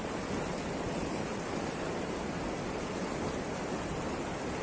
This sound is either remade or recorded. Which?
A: recorded